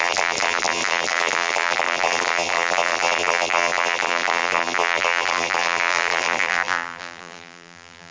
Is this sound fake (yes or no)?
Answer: yes